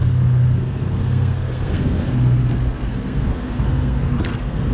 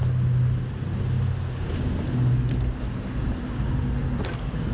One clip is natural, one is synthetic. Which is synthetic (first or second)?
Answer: first